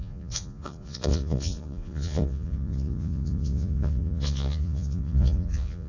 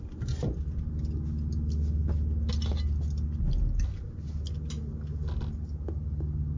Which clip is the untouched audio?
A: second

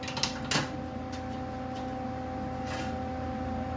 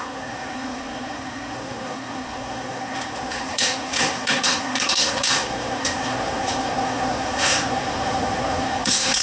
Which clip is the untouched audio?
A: first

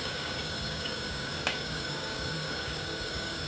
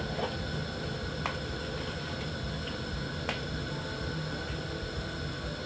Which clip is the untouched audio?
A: second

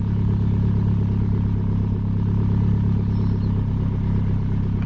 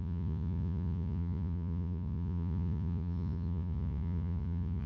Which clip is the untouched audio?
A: first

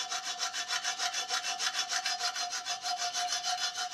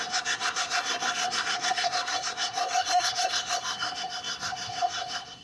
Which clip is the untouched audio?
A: first